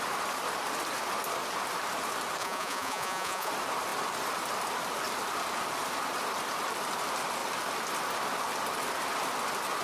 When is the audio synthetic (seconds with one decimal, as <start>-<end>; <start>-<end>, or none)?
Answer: 2.4-3.5